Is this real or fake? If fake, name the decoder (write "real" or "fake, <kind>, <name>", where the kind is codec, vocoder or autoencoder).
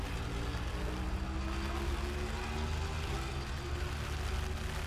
real